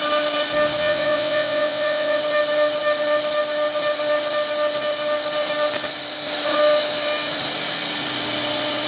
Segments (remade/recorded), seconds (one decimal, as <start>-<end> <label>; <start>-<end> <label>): 0.0-0.8 recorded; 0.8-2.2 remade; 2.2-8.9 recorded

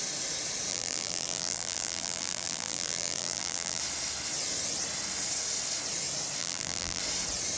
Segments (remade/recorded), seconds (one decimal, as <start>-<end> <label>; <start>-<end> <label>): 0.0-0.7 recorded; 0.7-3.8 remade; 3.8-6.4 recorded; 6.4-7.0 remade; 7.0-7.6 recorded